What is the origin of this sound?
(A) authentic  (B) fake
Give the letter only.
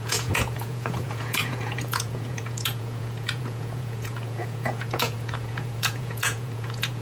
B